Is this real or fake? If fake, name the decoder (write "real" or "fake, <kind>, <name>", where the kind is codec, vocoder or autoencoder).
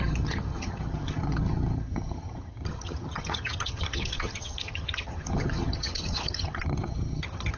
fake, vocoder, HiFi-GAN